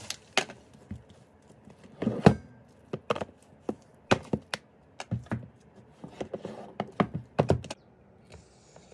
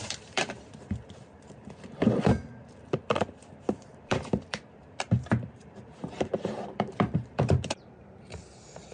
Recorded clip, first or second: first